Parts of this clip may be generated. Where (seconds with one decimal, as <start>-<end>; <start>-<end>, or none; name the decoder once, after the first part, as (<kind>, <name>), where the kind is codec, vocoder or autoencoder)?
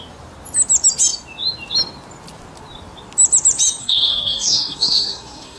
3.8-5.6 (codec, SNAC)